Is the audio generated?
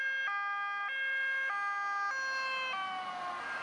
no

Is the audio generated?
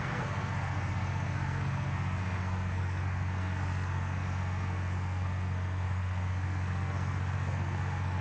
yes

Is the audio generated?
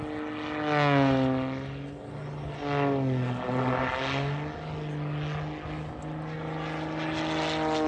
no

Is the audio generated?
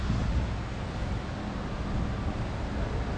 no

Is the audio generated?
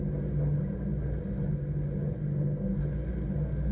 no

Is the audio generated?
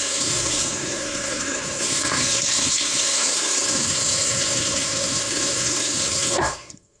yes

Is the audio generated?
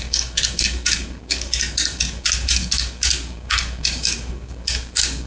yes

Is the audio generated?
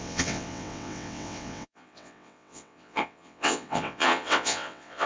yes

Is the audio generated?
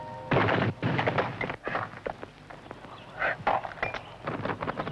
no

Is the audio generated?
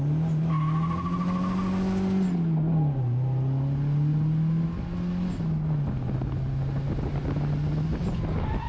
no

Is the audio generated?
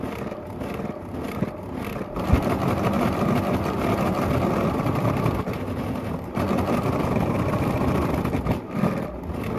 no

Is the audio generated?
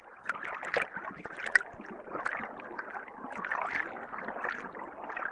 no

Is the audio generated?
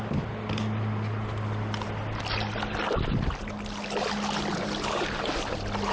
no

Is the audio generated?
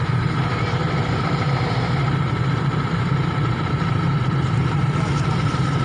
yes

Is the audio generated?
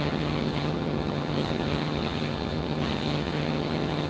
yes